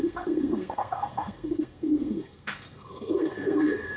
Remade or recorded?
remade